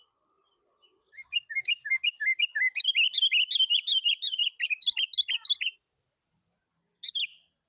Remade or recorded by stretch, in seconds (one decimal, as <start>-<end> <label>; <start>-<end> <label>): 0.0-7.7 recorded